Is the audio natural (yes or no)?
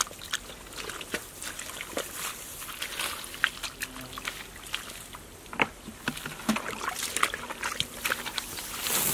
yes